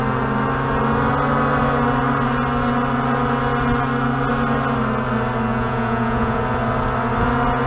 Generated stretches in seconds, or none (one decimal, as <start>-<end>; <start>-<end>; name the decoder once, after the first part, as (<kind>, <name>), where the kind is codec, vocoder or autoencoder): 5.5-6.4 (vocoder, Vocos)